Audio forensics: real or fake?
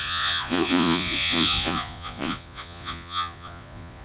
fake